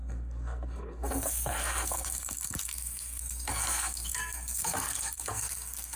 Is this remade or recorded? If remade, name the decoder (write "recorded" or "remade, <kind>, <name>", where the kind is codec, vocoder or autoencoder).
remade, codec, SNAC